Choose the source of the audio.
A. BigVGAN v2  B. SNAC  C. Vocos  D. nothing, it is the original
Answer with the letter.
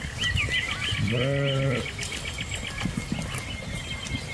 D